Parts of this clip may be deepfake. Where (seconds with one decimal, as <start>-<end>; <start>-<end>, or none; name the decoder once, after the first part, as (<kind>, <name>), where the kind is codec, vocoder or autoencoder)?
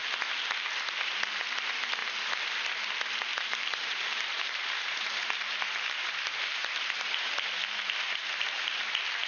3.3-7.5 (vocoder, BigVGAN v2)